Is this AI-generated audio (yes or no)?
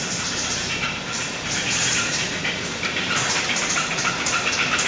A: yes